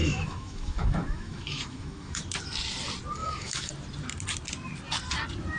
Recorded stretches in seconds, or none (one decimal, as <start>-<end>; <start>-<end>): 2.2-3.2; 3.7-5.6